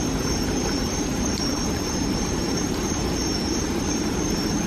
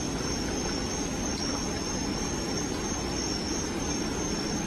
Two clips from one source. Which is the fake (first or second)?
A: first